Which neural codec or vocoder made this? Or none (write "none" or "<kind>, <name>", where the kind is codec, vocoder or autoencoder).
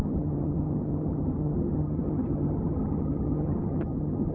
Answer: vocoder, HiFi-GAN